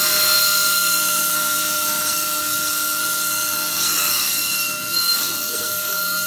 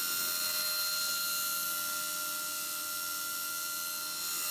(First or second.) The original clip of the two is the second